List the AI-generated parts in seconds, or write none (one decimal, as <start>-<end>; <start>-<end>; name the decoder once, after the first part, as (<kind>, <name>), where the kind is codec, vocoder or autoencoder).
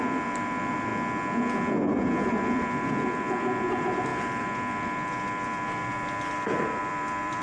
0.0-0.9 (vocoder, BigVGAN v2); 2.3-7.4